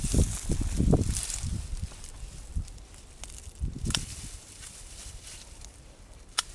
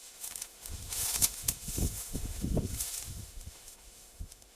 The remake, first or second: second